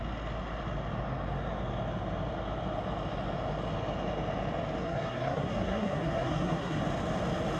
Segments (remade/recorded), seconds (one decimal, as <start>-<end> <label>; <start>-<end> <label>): 0.0-4.8 recorded; 4.8-6.8 remade; 6.8-7.6 recorded